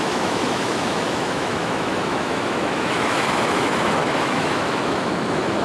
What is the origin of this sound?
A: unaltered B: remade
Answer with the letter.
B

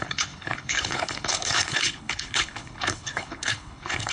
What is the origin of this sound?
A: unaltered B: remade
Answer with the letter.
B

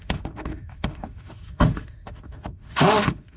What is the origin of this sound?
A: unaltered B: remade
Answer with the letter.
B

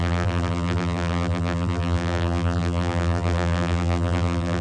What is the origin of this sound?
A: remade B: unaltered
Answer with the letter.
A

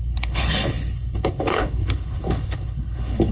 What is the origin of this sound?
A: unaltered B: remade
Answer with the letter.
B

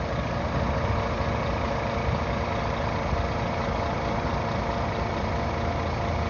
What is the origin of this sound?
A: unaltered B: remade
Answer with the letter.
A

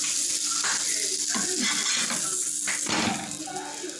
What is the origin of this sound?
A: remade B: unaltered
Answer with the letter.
B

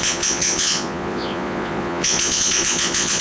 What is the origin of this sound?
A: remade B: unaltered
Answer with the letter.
A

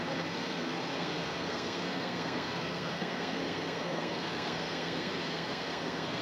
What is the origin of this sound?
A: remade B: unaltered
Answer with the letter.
A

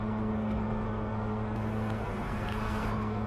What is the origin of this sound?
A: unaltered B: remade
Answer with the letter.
B